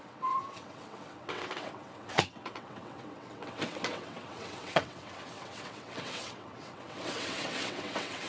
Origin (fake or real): fake